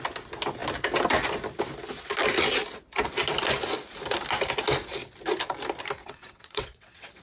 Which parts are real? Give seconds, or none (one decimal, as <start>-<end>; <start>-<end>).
0.0-6.0